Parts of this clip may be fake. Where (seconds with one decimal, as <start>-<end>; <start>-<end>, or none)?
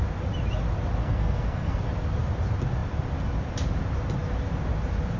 1.0-1.8